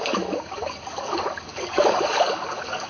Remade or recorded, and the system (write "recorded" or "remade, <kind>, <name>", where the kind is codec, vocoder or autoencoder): remade, codec, DAC